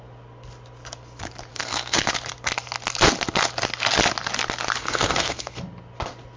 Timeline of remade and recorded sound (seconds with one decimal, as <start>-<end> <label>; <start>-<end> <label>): 0.0-1.5 recorded; 1.5-2.1 remade; 2.1-4.8 recorded; 4.8-5.6 remade; 5.6-6.4 recorded